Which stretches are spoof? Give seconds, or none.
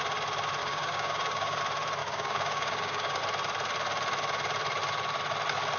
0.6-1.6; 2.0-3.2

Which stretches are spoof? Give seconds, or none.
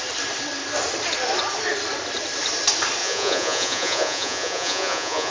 3.0-5.3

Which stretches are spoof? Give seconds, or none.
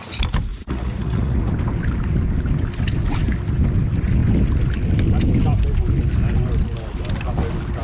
0.5-1.5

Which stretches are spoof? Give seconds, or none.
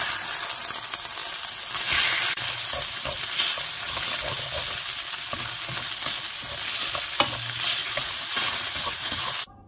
7.8-9.2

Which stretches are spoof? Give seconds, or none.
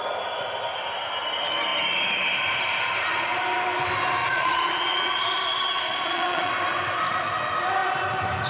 4.2-5.2; 5.9-6.5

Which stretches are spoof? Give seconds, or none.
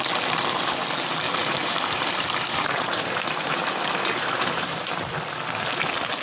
1.4-5.1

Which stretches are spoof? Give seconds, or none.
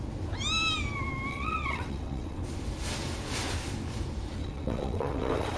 1.3-2.4; 4.4-5.6